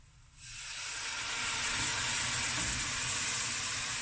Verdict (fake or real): real